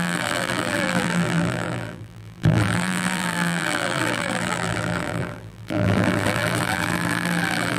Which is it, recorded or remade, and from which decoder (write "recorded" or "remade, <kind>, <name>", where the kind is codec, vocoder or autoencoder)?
remade, vocoder, BigVGAN v2